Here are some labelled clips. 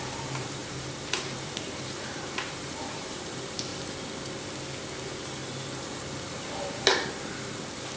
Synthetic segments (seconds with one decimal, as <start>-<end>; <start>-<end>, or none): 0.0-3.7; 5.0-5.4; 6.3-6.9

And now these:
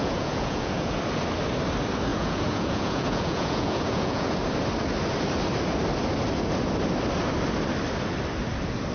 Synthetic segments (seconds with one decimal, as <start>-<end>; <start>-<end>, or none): 0.0-1.0; 2.1-4.3

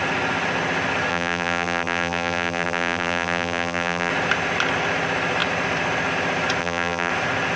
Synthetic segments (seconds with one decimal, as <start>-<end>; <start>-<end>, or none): 1.1-4.1; 6.6-7.1

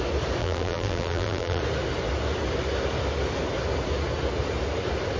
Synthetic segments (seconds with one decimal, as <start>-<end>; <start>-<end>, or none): 0.4-1.6

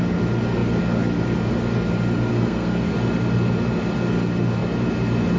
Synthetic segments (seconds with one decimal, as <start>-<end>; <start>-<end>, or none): 2.3-2.9